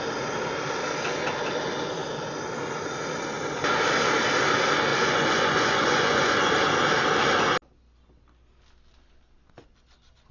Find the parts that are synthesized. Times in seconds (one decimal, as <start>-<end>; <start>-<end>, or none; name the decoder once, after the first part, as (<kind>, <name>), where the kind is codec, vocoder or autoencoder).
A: 4.9-6.5 (vocoder, Vocos)